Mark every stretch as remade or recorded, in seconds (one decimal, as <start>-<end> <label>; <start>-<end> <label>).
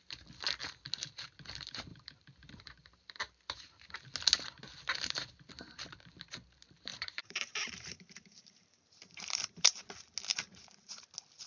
0.0-1.9 recorded; 1.9-3.9 remade; 3.9-6.9 recorded; 6.9-9.9 remade; 9.9-10.3 recorded; 10.3-11.0 remade; 11.0-11.5 recorded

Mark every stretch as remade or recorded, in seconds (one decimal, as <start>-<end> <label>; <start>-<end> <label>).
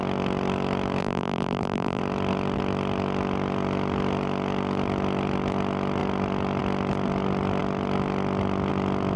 0.0-1.0 recorded; 1.0-2.0 remade; 2.0-9.2 recorded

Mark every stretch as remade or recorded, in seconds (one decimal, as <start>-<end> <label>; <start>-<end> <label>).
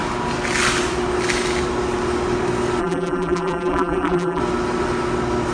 0.0-2.8 recorded; 2.8-4.4 remade; 4.4-5.5 recorded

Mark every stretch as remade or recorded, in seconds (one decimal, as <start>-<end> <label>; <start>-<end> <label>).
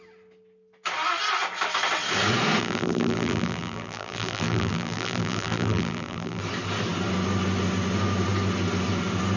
0.0-2.6 recorded; 2.6-6.4 remade; 6.4-9.4 recorded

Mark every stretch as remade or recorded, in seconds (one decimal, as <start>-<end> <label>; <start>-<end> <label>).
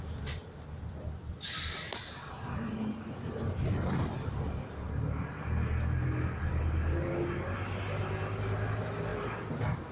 0.0-9.9 recorded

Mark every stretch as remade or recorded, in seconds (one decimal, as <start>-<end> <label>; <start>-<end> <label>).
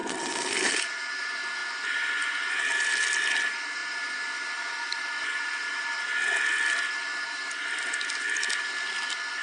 0.0-1.6 remade; 1.6-2.7 recorded; 2.7-9.4 remade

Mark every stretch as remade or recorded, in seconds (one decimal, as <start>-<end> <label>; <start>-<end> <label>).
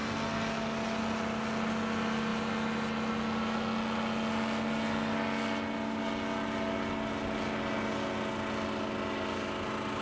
0.0-10.0 recorded